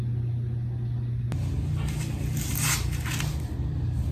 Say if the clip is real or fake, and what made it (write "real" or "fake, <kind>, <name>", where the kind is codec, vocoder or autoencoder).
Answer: real